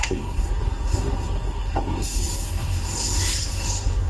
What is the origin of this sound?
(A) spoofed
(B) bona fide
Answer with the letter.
A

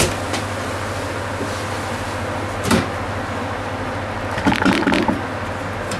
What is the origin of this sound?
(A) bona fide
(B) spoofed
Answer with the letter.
A